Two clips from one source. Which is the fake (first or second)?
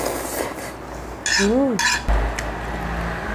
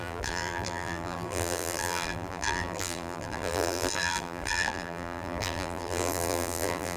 second